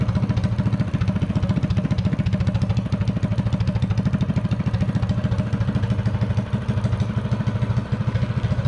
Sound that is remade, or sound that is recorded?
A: recorded